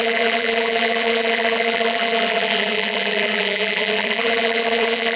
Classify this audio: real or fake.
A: fake